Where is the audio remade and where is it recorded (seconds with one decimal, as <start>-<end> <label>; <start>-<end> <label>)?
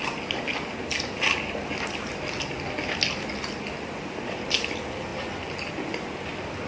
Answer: 0.0-6.7 recorded